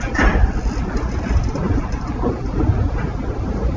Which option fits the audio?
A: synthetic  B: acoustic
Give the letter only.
B